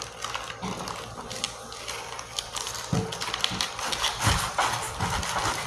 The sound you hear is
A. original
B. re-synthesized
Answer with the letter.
A